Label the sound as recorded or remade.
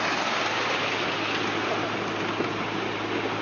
recorded